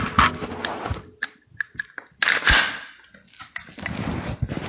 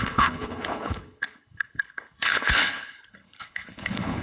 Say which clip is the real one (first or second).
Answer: first